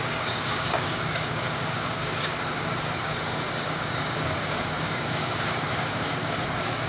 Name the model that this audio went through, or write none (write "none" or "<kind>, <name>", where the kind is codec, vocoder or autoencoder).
codec, DAC